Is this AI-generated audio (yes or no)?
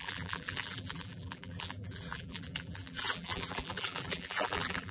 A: yes